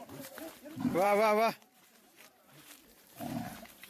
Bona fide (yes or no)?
no